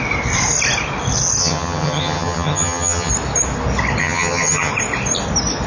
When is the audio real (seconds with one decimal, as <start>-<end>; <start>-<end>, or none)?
0.0-1.4; 3.1-4.0; 4.7-5.7